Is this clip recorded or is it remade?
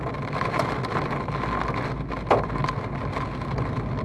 recorded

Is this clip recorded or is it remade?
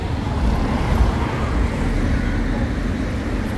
recorded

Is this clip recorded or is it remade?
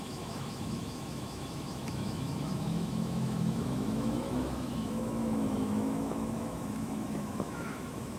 remade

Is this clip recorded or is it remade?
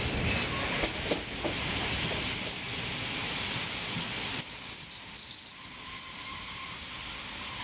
recorded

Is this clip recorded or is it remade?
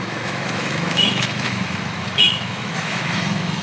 remade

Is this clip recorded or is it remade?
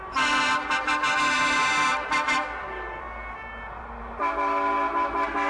recorded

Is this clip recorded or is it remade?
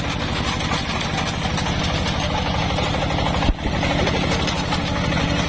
recorded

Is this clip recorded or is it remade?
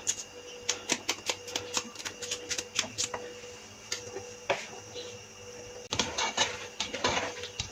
recorded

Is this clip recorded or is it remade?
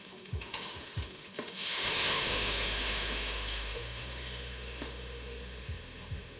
remade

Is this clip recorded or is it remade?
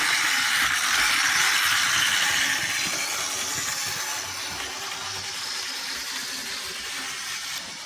recorded